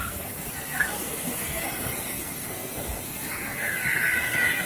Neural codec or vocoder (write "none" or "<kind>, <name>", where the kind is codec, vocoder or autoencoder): codec, SNAC